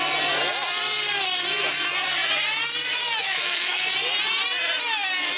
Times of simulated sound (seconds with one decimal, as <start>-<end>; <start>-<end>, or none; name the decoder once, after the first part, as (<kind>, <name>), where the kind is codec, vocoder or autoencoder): 3.2-3.8 (autoencoder, DAC-VAE)